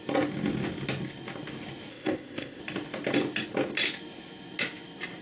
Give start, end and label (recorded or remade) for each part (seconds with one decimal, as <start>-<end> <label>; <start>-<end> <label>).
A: 0.0-1.9 recorded; 1.9-2.6 remade; 2.6-5.2 recorded